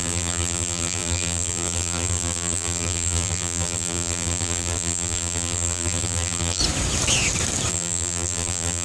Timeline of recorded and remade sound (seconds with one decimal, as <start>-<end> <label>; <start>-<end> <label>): 0.0-6.6 remade; 6.6-7.7 recorded; 7.7-8.8 remade